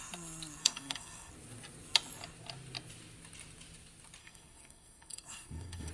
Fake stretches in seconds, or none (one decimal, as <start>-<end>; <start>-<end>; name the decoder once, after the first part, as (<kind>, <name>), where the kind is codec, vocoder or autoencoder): 0.6-1.3 (codec, SNAC); 4.2-5.9